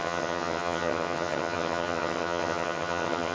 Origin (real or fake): fake